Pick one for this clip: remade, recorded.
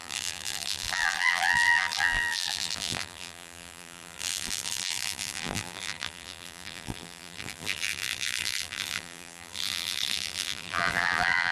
remade